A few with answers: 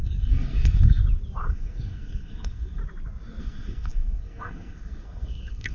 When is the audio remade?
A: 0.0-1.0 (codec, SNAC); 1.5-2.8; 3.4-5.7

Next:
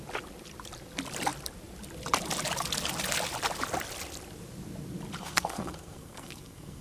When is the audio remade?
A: 5.2-6.8 (codec, SNAC)

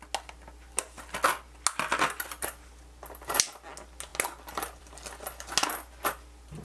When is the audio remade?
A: none